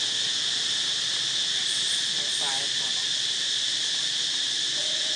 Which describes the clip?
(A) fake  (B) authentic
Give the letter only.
B